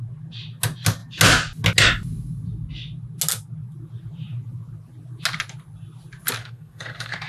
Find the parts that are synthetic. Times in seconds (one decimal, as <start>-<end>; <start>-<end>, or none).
6.4-7.3